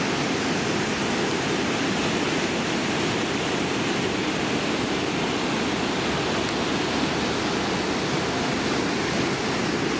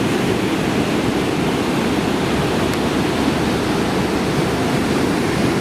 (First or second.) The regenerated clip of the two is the second